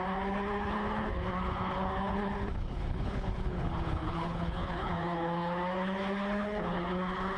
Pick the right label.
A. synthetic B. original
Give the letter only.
A